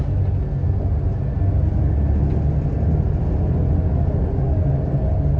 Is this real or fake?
real